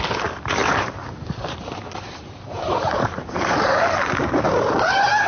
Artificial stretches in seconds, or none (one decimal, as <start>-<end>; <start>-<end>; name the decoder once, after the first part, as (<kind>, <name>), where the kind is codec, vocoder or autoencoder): 0.6-3.8 (vocoder, BigVGAN v2)